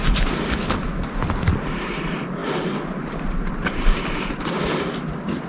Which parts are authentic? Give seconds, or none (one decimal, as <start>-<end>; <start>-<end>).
0.0-2.4; 4.3-5.5